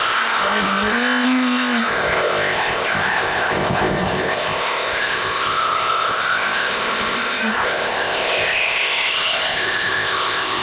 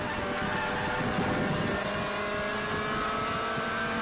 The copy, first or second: first